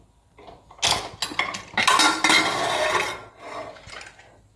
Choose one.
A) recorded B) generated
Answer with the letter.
A